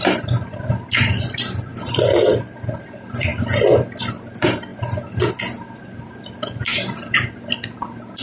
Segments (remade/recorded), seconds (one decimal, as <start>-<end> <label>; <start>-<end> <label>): 0.0-4.7 remade; 4.7-5.4 recorded; 5.4-8.2 remade